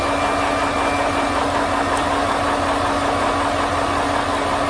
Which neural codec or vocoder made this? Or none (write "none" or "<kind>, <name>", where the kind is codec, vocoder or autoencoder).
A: none